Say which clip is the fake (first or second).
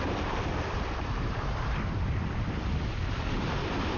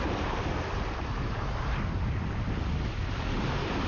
first